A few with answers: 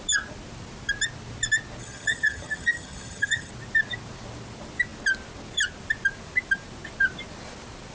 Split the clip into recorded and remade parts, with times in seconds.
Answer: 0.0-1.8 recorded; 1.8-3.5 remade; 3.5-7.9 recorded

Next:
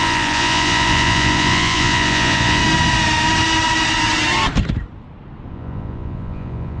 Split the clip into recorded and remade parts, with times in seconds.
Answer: 0.0-2.6 remade; 2.6-5.5 recorded; 5.5-6.8 remade

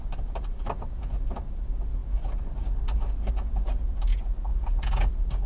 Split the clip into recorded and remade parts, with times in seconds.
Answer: 0.0-4.5 recorded; 4.5-5.1 remade; 5.1-5.5 recorded

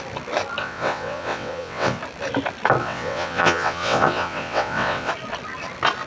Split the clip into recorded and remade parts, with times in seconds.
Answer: 0.0-0.6 recorded; 0.6-2.0 remade; 2.0-2.8 recorded; 2.8-5.1 remade; 5.1-6.1 recorded

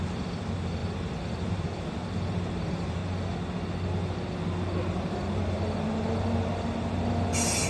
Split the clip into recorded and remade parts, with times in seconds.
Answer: 0.0-3.0 remade; 3.0-4.9 recorded; 4.9-7.7 remade